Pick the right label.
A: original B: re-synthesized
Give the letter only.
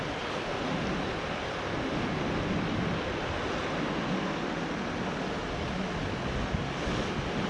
A